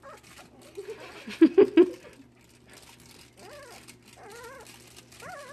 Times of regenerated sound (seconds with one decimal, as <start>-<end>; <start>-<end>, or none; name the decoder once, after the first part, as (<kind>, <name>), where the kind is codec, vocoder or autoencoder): none